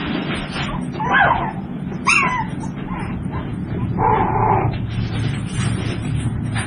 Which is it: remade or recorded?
recorded